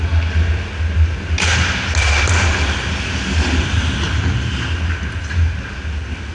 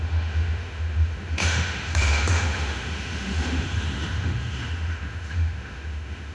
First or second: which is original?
first